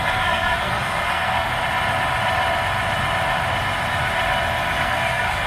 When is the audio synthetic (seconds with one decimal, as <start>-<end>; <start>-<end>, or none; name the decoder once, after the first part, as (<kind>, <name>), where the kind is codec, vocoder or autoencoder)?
0.0-1.5 (codec, SNAC); 4.8-5.5